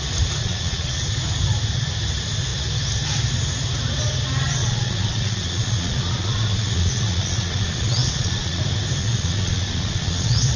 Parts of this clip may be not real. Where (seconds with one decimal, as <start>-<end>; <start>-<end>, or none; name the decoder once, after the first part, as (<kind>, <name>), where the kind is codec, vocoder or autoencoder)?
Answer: 0.4-1.0 (vocoder, Vocos); 4.6-8.6; 9.0-10.6